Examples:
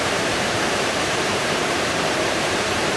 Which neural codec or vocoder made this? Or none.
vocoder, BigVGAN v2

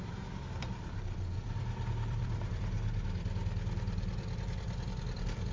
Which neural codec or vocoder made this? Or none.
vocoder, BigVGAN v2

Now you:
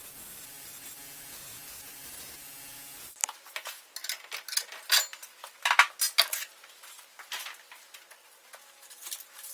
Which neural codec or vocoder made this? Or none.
none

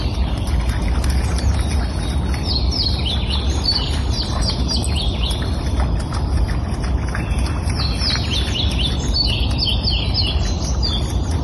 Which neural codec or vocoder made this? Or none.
none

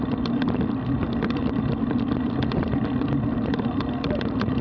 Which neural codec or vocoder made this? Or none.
vocoder, BigVGAN v2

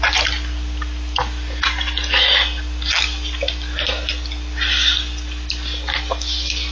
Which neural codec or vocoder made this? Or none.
none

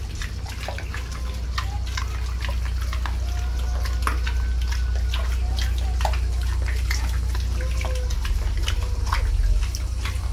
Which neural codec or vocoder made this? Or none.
none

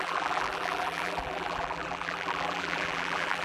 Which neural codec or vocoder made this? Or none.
vocoder, BigVGAN v2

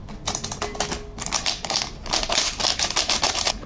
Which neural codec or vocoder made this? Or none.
none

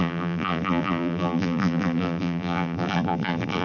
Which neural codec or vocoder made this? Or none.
vocoder, BigVGAN v2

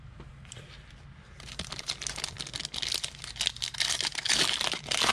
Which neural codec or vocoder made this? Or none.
none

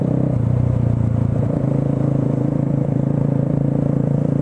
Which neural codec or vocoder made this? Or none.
vocoder, BigVGAN v2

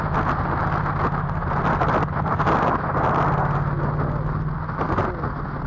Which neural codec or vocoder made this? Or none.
none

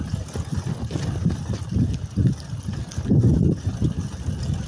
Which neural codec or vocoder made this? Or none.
none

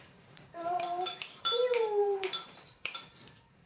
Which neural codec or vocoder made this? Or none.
vocoder, BigVGAN v2